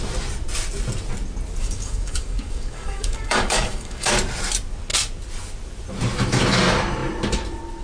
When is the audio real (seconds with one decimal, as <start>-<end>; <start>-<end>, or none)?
0.0-1.6; 4.1-7.8